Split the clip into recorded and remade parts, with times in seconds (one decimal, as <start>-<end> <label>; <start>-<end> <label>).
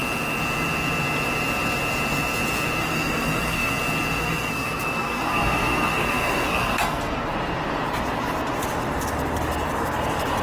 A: 0.0-2.8 recorded; 2.8-3.7 remade; 3.7-4.2 recorded; 4.2-7.3 remade; 7.3-10.4 recorded